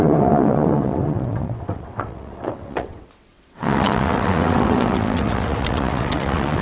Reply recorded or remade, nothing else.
remade